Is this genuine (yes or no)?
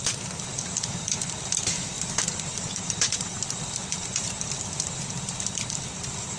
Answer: no